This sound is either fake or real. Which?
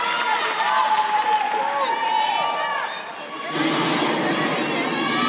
real